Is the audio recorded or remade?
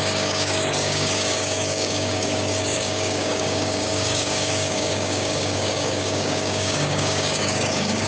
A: remade